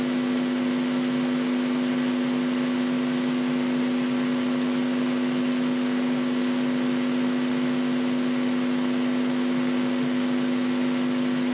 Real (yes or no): yes